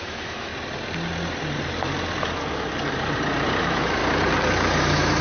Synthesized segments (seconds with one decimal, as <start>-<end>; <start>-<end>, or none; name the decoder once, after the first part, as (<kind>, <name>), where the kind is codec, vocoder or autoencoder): 0.0-0.5 (autoencoder, DAC-VAE); 3.6-4.0; 4.8-5.2